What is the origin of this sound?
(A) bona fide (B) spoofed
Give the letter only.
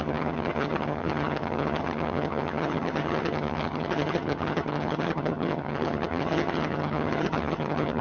B